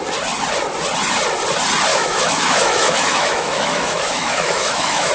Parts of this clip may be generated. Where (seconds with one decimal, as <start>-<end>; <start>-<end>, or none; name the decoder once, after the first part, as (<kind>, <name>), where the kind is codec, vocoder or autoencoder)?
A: 1.9-5.1 (autoencoder, DAC-VAE)